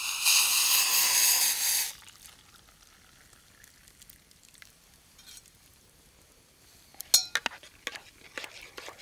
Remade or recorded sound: recorded